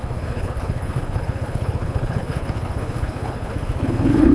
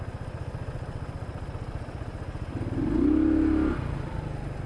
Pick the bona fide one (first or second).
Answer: second